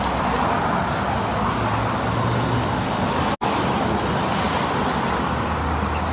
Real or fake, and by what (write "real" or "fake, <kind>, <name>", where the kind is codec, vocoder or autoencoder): real